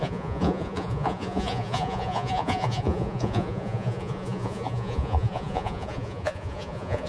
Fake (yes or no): yes